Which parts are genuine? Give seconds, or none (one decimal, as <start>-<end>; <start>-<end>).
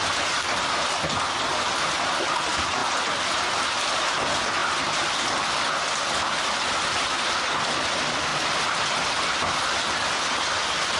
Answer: 0.0-11.0